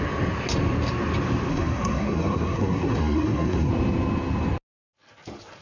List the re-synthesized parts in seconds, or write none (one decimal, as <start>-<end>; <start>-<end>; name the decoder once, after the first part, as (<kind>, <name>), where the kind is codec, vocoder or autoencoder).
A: 1.5-3.7 (codec, SNAC)